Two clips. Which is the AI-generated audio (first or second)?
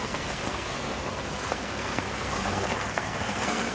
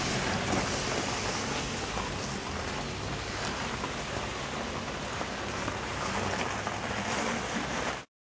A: first